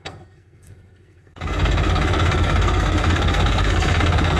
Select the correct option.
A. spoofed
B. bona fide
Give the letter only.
A